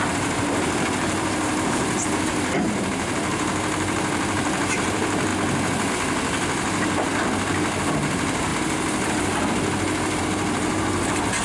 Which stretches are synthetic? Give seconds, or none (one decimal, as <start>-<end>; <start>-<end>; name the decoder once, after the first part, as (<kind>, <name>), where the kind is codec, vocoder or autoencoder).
0.0-5.3 (vocoder, BigVGAN v2); 5.9-7.1; 7.8-8.5; 10.2-11.4